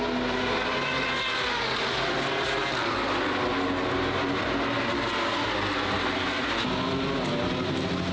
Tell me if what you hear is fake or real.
real